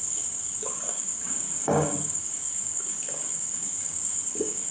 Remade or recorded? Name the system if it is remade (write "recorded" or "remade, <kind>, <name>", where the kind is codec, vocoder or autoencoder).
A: remade, codec, DAC